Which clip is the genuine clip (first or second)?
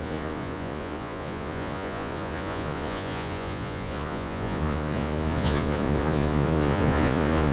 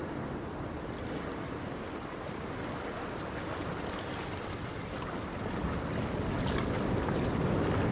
second